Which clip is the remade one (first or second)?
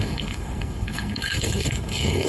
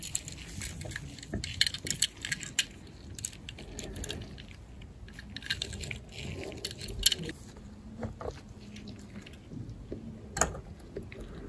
first